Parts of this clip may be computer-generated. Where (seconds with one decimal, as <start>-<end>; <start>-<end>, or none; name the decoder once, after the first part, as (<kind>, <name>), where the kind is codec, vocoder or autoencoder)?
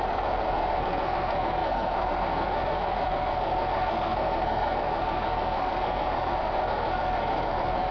0.0-7.9 (codec, SNAC)